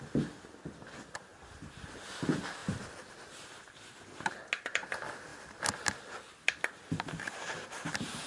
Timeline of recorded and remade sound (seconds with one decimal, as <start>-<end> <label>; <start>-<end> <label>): 0.0-8.3 recorded